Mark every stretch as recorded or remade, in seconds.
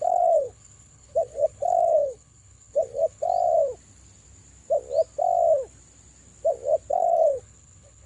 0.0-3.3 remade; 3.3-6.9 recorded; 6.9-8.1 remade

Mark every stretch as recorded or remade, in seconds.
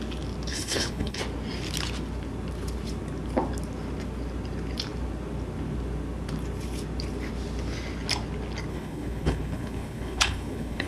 0.0-0.5 recorded; 0.5-1.2 remade; 1.2-8.7 recorded; 8.7-10.9 remade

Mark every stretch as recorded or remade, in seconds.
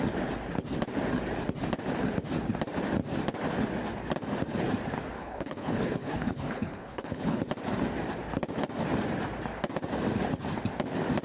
0.0-5.2 recorded; 5.2-7.4 remade; 7.4-11.2 recorded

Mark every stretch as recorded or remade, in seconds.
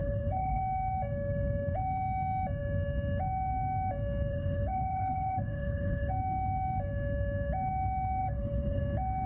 0.0-0.6 remade; 0.6-4.3 recorded; 4.3-6.1 remade; 6.1-8.2 recorded; 8.2-8.8 remade; 8.8-9.3 recorded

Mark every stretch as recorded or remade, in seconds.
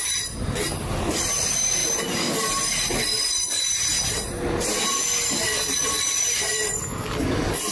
0.0-7.7 recorded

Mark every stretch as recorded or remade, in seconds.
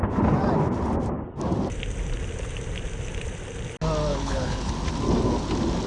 0.0-4.1 recorded; 4.1-4.7 remade; 4.7-5.9 recorded